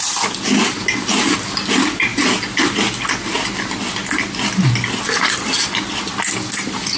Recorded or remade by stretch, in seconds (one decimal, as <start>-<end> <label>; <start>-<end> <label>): 0.0-7.0 recorded